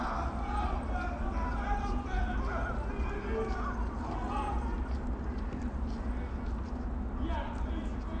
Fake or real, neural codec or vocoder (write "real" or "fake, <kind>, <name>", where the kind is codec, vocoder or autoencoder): real